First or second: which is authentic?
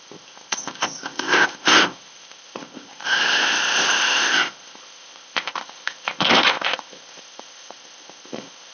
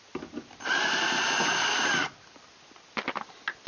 second